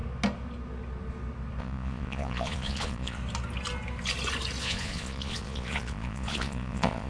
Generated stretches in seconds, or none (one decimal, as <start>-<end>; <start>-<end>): 1.6-3.2; 4.6-7.1